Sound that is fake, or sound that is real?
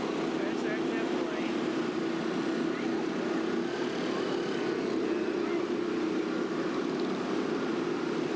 real